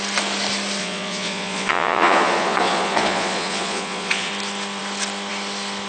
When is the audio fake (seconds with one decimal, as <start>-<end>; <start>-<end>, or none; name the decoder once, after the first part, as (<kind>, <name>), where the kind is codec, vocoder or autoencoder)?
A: 0.8-4.3 (vocoder, Vocos)